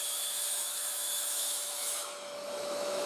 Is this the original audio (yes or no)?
no